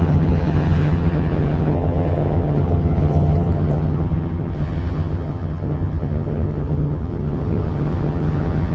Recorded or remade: remade